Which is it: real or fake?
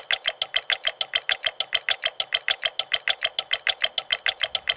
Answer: real